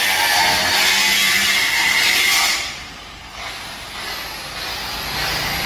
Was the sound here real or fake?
real